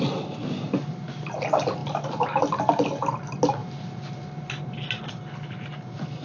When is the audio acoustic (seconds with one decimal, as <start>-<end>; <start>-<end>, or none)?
0.0-6.2